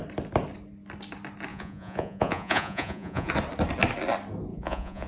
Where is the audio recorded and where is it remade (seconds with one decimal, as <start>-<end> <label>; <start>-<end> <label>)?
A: 0.0-1.5 recorded; 1.5-3.3 remade; 3.3-4.5 recorded; 4.5-5.1 remade